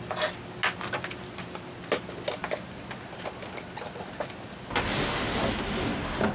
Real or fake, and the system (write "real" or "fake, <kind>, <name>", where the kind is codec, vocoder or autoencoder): real